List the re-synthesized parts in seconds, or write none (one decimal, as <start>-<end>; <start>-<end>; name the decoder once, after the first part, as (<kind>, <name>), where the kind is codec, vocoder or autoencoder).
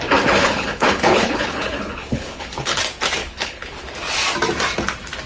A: 0.4-2.8 (codec, HILCodec); 3.2-3.9